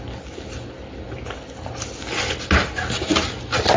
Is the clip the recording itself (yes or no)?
yes